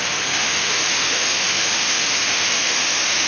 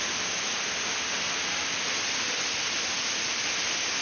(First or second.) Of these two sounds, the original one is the second